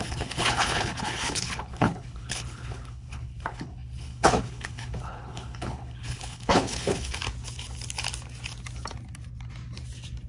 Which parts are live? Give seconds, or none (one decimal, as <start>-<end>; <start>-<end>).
7.2-10.3